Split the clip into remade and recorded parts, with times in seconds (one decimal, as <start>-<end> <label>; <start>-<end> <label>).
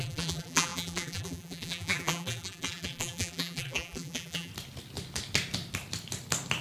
0.0-4.5 remade; 4.5-6.6 recorded